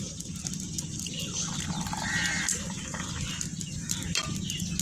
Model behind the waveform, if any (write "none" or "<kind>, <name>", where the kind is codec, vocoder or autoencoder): none